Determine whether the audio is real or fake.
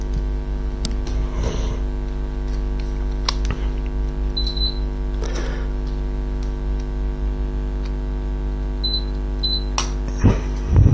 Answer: real